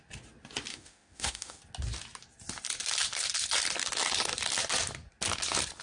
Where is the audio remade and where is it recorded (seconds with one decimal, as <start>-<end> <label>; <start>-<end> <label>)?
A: 0.0-0.7 recorded; 0.7-1.6 remade; 1.6-5.8 recorded

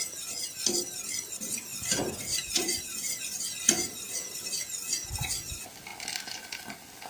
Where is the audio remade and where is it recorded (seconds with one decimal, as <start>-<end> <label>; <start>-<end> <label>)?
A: 0.0-1.7 recorded; 1.7-3.4 remade; 3.4-7.1 recorded

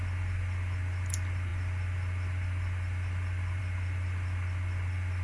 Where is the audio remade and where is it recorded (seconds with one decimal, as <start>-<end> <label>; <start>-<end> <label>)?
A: 0.0-5.2 recorded

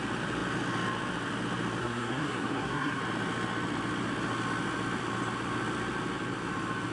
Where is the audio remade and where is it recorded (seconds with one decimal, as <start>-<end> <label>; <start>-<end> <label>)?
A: 0.0-1.8 recorded; 1.8-3.0 remade; 3.0-6.9 recorded

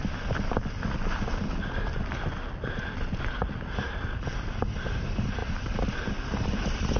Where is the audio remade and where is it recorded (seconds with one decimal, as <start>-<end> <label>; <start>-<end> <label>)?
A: 0.0-7.0 recorded

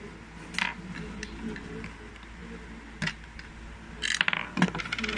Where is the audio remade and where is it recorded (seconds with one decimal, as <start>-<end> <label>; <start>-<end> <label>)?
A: 0.0-5.2 recorded